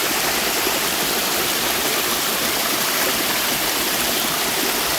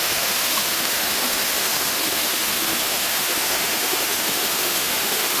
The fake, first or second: second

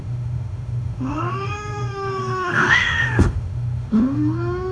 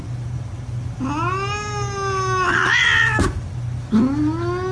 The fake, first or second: first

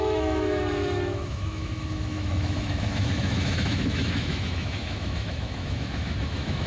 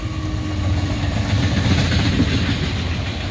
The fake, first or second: first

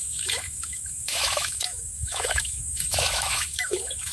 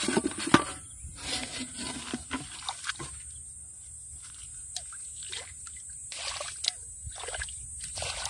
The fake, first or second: first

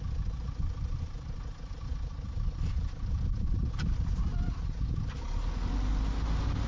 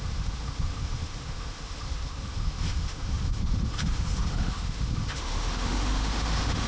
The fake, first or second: second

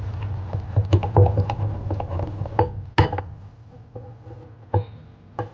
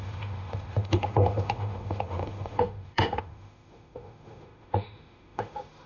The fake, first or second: second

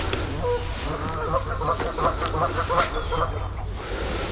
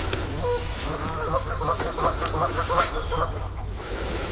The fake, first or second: second